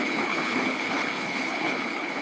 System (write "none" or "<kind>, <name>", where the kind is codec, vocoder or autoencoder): codec, HILCodec